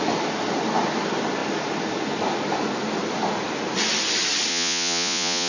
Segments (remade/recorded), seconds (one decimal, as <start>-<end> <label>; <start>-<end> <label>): 0.0-4.5 recorded; 4.5-5.5 remade